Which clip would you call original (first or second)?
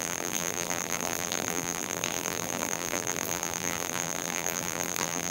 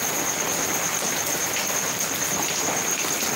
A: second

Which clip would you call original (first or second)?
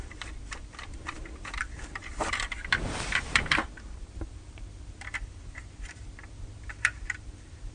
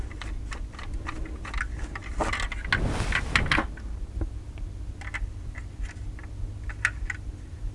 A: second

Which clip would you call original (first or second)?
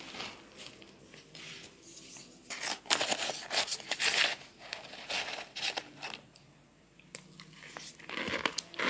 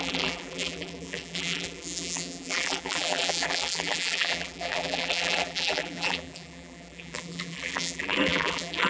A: first